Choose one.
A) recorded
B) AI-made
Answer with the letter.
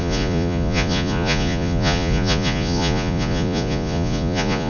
B